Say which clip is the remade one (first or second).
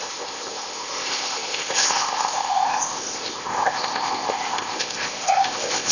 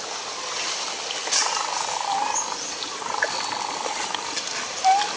first